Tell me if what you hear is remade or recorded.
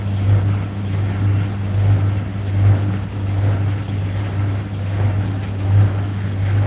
recorded